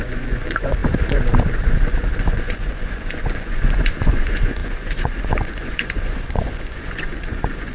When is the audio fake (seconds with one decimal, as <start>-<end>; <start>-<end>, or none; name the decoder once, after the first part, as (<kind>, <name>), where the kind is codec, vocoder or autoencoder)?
0.0-7.7 (vocoder, Vocos)